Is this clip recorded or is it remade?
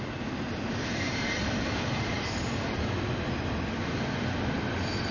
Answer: recorded